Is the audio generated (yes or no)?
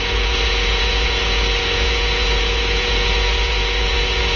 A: yes